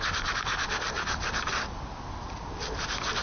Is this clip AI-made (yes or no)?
no